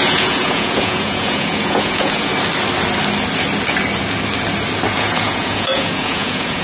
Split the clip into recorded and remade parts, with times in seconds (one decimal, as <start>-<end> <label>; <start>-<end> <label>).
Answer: 0.0-2.3 remade; 2.3-4.9 recorded; 4.9-6.6 remade